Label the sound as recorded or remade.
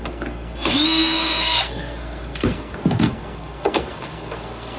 remade